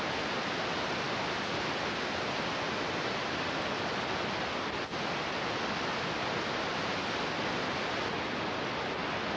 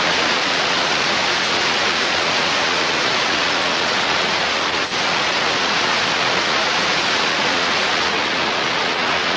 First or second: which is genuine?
first